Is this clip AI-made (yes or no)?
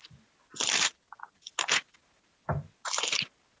no